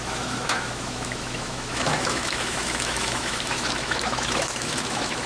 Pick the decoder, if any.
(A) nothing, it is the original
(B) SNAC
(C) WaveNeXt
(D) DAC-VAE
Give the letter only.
D